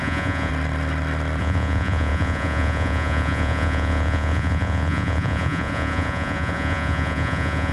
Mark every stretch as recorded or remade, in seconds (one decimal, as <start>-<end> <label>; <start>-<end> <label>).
0.0-0.5 remade; 0.5-1.4 recorded; 1.4-7.7 remade